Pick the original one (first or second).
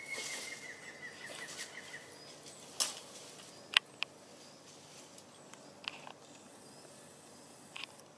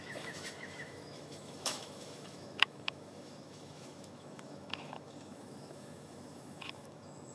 first